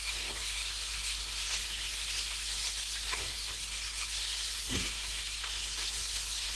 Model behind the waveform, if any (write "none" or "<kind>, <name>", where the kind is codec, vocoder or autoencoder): codec, SNAC